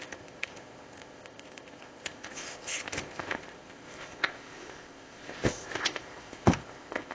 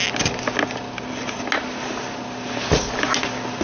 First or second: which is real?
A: second